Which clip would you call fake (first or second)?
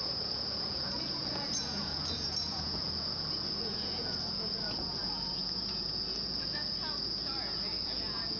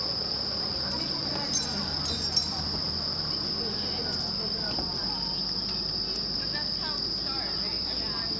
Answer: first